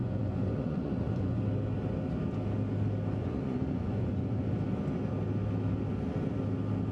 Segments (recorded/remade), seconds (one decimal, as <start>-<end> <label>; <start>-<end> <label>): 0.0-1.4 remade; 1.4-3.2 recorded; 3.2-4.5 remade; 4.5-6.9 recorded